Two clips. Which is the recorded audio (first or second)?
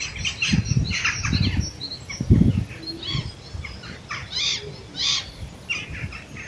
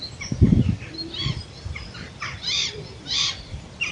first